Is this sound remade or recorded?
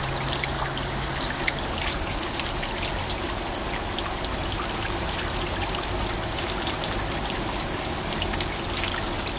recorded